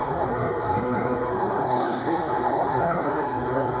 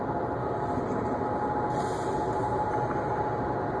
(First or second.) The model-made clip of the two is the first